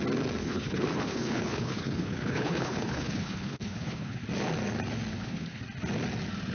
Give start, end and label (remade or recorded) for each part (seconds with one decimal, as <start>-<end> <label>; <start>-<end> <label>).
0.0-0.4 recorded; 0.4-4.2 remade; 4.2-5.1 recorded; 5.1-5.6 remade; 5.6-6.5 recorded